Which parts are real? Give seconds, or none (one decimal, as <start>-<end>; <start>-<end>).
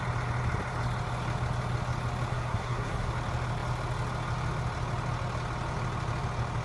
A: 0.0-2.3; 3.1-6.6